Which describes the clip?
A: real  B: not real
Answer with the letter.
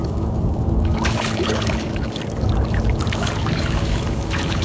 B